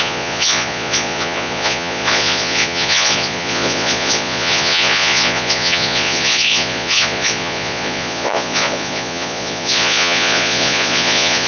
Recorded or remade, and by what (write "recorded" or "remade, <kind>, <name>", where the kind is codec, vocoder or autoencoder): remade, vocoder, Vocos